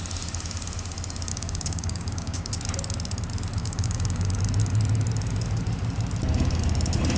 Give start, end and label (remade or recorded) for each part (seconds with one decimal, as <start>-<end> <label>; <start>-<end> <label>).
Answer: 0.0-1.3 recorded; 1.3-2.5 remade; 2.5-3.6 recorded; 3.6-4.4 remade; 4.4-7.2 recorded